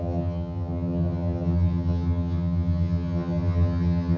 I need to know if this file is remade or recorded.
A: remade